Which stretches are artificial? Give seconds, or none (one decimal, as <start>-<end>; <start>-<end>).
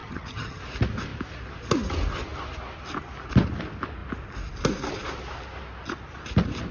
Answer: 0.0-0.6